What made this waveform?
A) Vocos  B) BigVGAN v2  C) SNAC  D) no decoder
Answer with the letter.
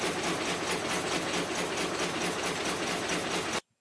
D